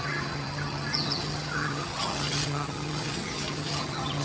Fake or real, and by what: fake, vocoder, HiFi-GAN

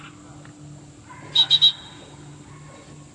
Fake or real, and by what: real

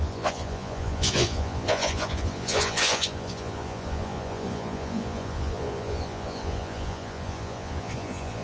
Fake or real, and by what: fake, vocoder, Vocos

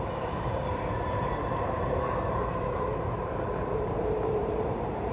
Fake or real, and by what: fake, vocoder, BigVGAN v2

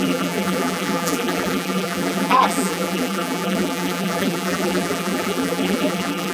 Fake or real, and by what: fake, vocoder, BigVGAN v2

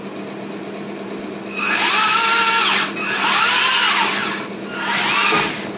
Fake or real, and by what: real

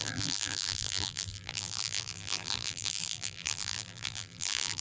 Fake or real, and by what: fake, vocoder, BigVGAN v2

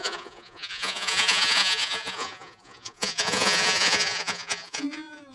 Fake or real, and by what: fake, vocoder, Vocos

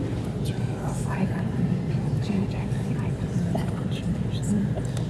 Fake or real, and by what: fake, vocoder, BigVGAN v2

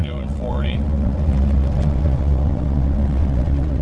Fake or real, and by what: fake, vocoder, WaveNeXt